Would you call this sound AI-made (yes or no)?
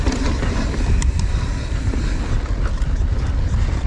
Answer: no